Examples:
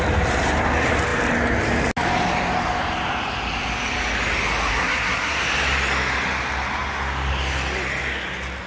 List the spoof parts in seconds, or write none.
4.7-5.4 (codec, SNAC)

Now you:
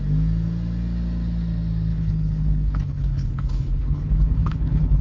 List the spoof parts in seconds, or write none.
1.9-5.0 (codec, HILCodec)

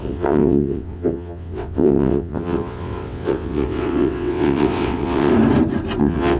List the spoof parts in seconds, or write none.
0.0-5.3 (vocoder, WaveNeXt); 6.0-6.4

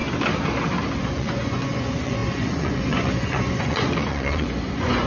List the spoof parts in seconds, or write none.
1.0-5.1 (vocoder, Vocos)

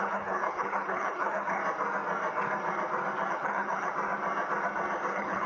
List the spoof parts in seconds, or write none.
0.0-1.6 (codec, HILCodec); 3.3-3.9; 5.1-5.5

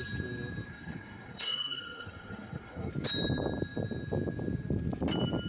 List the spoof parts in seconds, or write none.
0.7-2.9 (codec, SNAC)